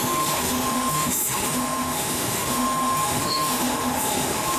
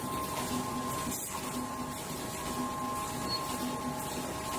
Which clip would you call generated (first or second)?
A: first